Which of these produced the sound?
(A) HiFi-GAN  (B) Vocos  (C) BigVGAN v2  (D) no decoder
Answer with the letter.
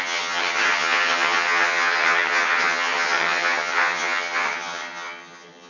A